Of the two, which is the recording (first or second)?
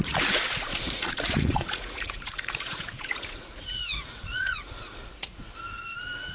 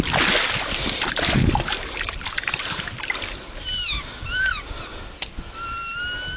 second